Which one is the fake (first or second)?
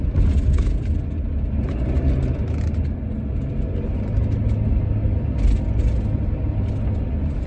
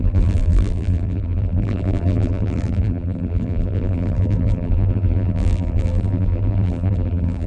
second